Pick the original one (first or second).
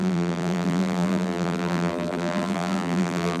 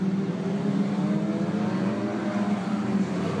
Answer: second